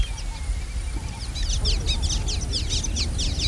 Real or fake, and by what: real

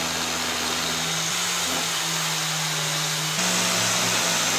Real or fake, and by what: real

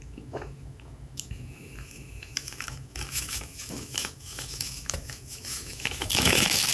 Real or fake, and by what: fake, autoencoder, DAC-VAE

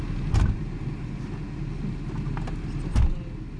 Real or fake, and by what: real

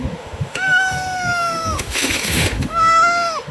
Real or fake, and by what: fake, autoencoder, DAC-VAE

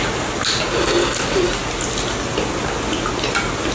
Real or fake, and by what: real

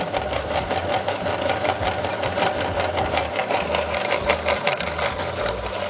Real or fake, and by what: real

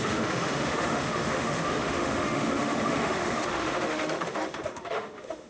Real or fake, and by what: fake, autoencoder, DAC-VAE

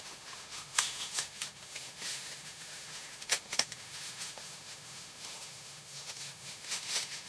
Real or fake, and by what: fake, autoencoder, DAC-VAE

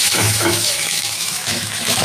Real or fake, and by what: fake, autoencoder, DAC-VAE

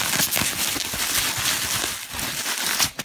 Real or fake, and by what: real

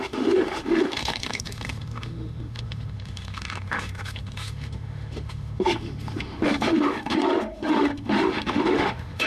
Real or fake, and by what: fake, autoencoder, DAC-VAE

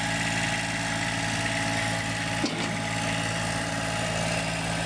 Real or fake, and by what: real